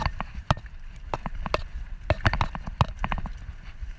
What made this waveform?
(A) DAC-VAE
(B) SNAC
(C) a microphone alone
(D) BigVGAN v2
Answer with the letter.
C